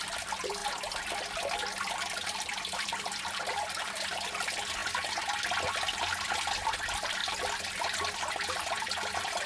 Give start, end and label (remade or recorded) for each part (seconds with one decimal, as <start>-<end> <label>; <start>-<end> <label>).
0.0-0.6 remade; 0.6-1.9 recorded; 1.9-4.8 remade; 4.8-6.6 recorded; 6.6-7.2 remade; 7.2-8.3 recorded; 8.3-9.5 remade